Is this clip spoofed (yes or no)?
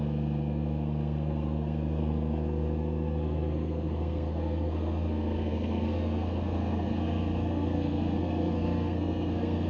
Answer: yes